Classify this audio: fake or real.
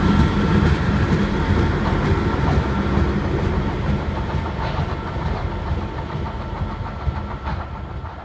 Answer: real